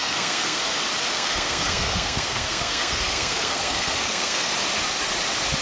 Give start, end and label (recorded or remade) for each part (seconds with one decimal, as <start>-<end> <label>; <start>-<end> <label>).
0.0-0.6 remade; 0.6-1.1 recorded; 1.1-4.5 remade; 4.5-5.6 recorded